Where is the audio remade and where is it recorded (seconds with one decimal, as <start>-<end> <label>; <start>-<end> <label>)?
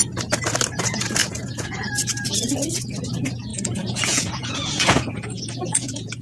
0.0-1.2 recorded; 1.2-1.9 remade; 1.9-3.5 recorded; 3.5-6.2 remade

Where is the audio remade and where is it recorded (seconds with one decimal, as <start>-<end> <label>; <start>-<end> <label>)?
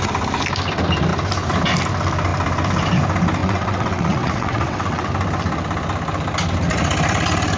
0.0-3.4 recorded; 3.4-5.1 remade; 5.1-7.6 recorded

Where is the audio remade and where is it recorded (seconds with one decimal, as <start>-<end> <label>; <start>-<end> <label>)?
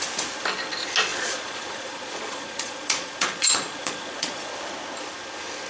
0.0-1.1 recorded; 1.1-4.5 remade; 4.5-5.7 recorded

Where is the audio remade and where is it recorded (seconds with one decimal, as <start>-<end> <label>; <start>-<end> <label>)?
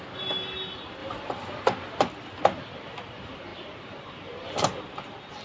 0.0-5.4 recorded